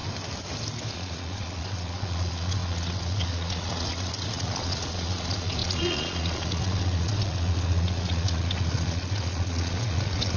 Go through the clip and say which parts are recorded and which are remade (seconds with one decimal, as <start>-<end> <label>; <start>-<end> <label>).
0.0-0.9 recorded; 0.9-10.4 remade